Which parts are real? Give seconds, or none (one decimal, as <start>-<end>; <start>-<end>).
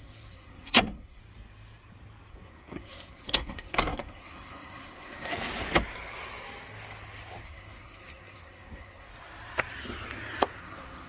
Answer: 1.2-2.3; 5.3-7.4; 9.1-10.6